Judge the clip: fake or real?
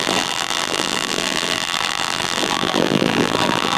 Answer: fake